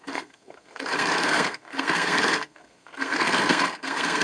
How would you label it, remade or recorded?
remade